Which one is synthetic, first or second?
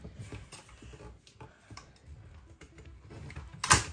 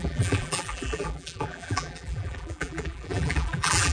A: second